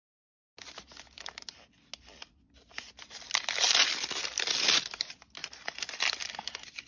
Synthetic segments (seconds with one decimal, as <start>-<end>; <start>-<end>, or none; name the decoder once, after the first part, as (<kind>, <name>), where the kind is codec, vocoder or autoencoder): none